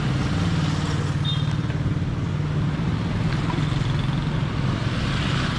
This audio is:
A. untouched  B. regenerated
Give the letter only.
A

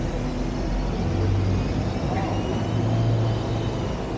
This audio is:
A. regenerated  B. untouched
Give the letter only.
B